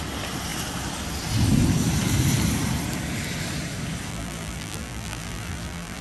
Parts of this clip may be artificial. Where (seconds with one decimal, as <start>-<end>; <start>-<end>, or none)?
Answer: 4.1-6.0